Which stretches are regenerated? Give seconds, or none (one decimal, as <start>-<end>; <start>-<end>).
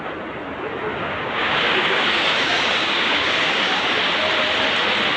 0.9-4.0